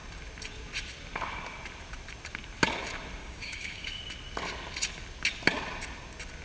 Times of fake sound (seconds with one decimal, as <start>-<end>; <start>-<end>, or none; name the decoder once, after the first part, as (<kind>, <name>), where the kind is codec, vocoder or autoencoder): 3.2-4.0 (codec, DAC)